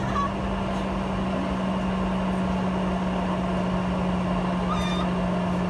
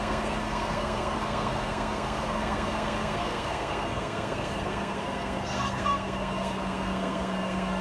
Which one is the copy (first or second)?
second